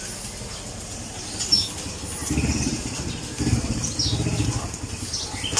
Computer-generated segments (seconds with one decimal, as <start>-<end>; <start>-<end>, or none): none